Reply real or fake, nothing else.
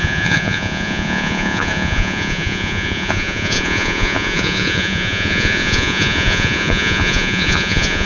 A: fake